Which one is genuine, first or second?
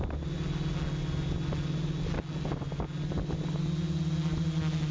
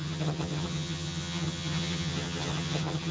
first